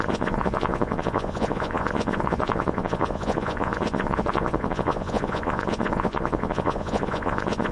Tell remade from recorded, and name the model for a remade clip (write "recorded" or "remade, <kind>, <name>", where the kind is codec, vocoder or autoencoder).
remade, vocoder, Vocos